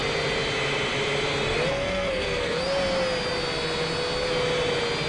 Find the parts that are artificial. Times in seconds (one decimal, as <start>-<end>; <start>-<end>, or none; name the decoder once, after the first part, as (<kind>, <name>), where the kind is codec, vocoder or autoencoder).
1.7-2.6 (codec, SNAC)